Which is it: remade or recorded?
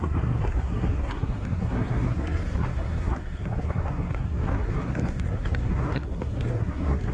remade